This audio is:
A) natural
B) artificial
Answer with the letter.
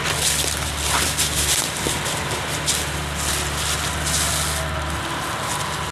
A